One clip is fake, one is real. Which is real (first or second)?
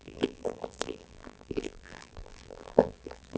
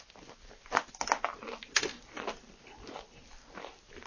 second